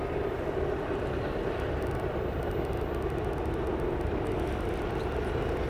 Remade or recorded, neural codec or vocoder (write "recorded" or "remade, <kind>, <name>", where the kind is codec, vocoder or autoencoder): recorded